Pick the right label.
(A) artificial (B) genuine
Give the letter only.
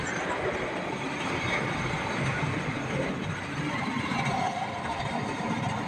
B